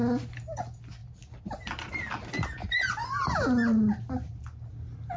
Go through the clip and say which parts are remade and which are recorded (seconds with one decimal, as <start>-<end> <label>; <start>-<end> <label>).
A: 0.0-1.0 recorded; 1.0-1.9 remade; 1.9-5.2 recorded